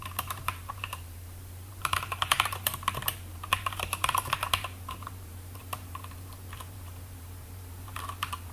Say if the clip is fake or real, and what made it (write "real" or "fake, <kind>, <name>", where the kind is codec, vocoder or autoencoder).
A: fake, vocoder, BigVGAN v2